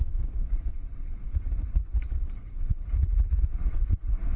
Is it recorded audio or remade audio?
remade